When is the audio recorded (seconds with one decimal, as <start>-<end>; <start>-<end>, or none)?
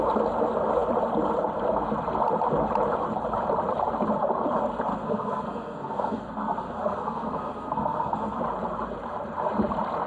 0.0-4.9; 8.4-10.1